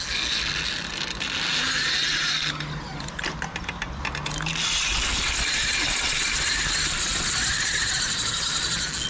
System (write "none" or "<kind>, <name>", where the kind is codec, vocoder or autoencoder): none